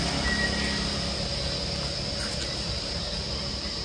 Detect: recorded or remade recorded